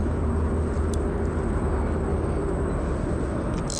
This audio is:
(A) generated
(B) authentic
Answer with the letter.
B